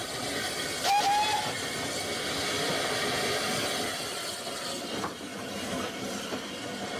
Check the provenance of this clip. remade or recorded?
recorded